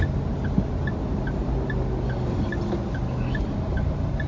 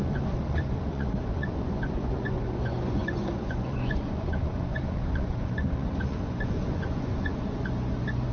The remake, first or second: second